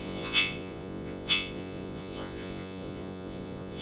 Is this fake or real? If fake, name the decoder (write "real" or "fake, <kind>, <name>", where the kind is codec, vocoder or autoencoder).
fake, vocoder, Vocos